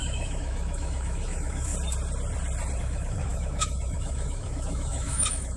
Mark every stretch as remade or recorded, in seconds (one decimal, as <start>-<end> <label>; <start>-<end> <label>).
0.0-1.7 remade; 1.7-2.8 recorded; 2.8-5.6 remade